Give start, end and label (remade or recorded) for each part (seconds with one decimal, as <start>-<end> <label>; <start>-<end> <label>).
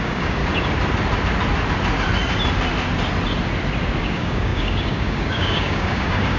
0.0-0.4 remade; 0.4-4.0 recorded; 4.0-6.4 remade